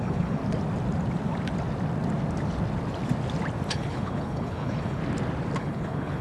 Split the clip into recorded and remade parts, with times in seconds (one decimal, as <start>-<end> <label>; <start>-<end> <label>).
0.0-0.4 remade; 0.4-3.7 recorded; 3.7-5.0 remade; 5.0-5.6 recorded; 5.6-6.2 remade

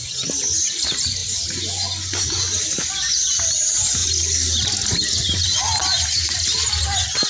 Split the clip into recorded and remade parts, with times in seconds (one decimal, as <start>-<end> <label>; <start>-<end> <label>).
0.0-7.3 recorded

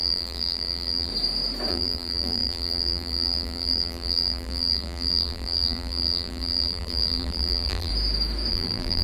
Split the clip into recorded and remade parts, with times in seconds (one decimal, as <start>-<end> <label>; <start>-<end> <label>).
0.0-1.1 remade; 1.1-1.7 recorded; 1.7-7.9 remade; 7.9-8.5 recorded; 8.5-9.0 remade

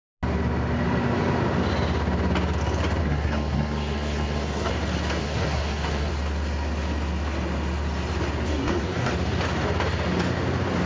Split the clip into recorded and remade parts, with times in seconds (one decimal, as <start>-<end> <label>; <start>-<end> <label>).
0.0-3.0 recorded; 3.0-4.7 remade; 4.7-5.2 recorded; 5.2-6.1 remade; 6.1-8.5 recorded; 8.5-9.1 remade; 9.1-10.9 recorded